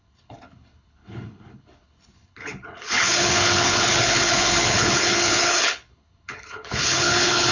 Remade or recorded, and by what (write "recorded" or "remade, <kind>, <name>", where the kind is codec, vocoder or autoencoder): remade, codec, HILCodec